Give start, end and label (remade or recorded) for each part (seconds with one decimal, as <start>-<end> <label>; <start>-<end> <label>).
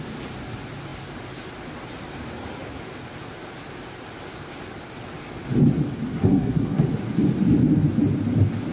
0.0-6.1 recorded; 6.1-6.8 remade; 6.8-8.7 recorded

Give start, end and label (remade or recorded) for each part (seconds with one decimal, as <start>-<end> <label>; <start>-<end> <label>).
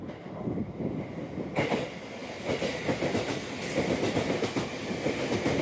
0.0-5.6 recorded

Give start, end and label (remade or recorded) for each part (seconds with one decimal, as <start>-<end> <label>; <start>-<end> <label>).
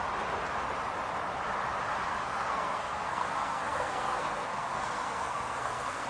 0.0-2.1 recorded; 2.1-6.1 remade